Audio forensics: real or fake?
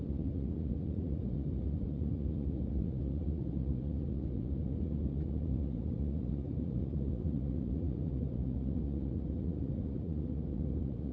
fake